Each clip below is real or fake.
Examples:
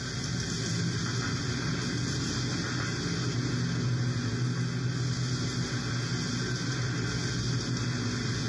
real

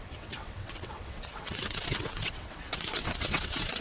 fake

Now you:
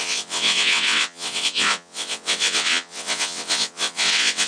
fake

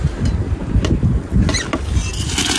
real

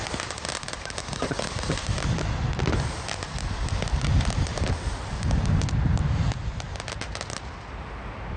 real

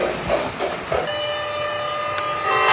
real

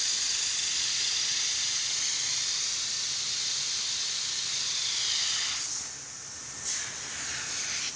real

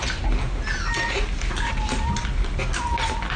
real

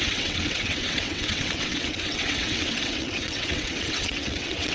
fake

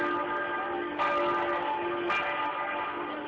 real